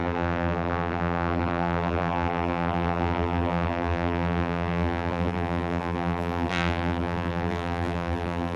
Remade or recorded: remade